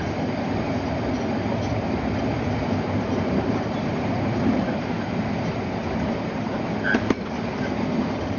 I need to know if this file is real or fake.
real